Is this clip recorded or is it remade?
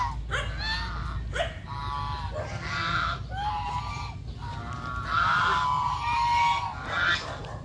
recorded